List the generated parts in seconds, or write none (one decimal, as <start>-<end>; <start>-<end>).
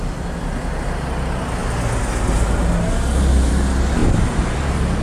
none